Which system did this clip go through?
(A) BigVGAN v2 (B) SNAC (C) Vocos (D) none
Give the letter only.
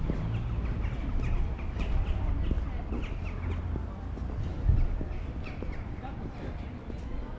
D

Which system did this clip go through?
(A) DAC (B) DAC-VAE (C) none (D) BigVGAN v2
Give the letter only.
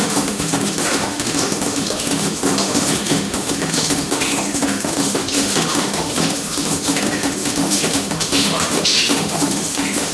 B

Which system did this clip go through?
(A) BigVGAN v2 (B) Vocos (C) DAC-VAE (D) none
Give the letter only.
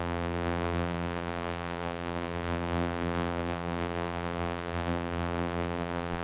A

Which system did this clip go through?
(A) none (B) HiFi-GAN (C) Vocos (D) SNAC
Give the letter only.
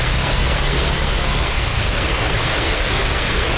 D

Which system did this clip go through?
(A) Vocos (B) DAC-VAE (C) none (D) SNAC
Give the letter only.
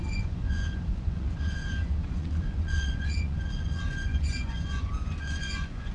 A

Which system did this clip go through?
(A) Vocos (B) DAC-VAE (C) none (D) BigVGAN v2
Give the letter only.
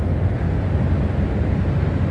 C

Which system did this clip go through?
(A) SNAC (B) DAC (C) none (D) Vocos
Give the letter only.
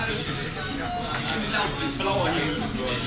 C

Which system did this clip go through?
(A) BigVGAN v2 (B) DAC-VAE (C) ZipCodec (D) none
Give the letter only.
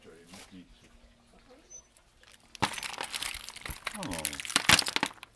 D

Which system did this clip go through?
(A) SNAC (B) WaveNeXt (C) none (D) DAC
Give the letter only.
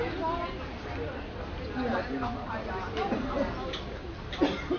C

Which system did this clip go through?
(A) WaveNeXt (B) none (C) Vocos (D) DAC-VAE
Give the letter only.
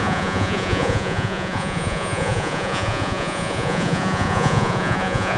C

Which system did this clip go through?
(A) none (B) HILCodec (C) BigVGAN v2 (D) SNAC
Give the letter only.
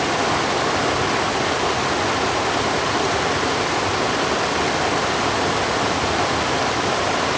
A